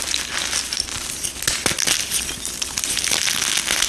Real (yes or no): yes